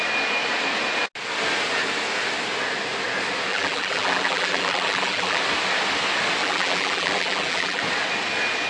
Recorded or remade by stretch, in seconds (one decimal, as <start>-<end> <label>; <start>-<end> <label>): 0.0-3.5 recorded; 3.5-5.4 remade; 5.4-6.4 recorded; 6.4-7.8 remade; 7.8-8.7 recorded